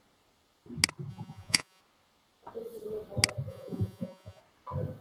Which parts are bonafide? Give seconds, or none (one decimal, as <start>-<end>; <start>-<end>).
0.0-1.1; 1.8-3.5; 4.4-5.0